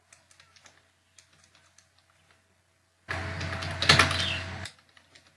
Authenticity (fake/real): real